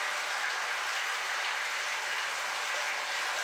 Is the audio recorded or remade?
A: recorded